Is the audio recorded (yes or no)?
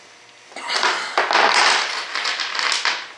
yes